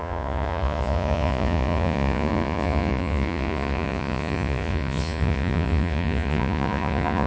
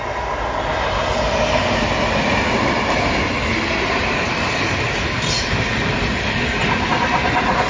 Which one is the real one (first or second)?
second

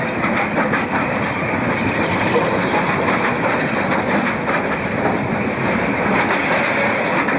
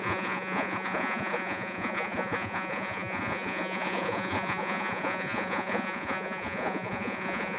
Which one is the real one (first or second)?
first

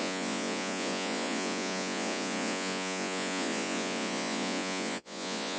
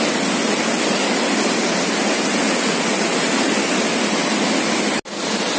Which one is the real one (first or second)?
second